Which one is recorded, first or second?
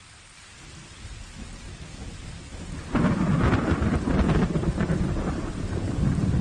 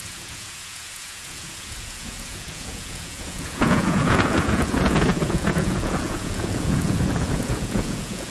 first